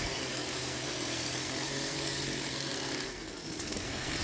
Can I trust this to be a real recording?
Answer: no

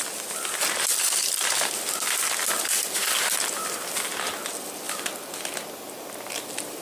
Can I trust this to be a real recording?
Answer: yes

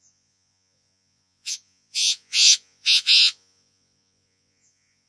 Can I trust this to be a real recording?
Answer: no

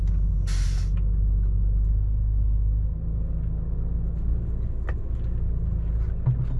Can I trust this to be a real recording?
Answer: yes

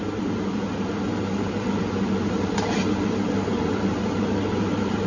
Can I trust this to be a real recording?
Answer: no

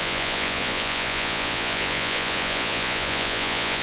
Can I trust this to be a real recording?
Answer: no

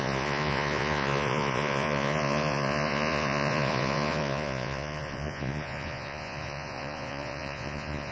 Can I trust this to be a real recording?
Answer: no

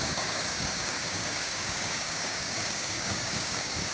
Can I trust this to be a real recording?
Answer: no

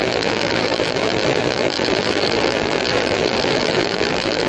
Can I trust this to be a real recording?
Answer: no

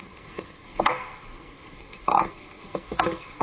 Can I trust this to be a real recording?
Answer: no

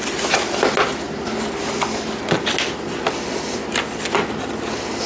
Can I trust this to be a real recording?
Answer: yes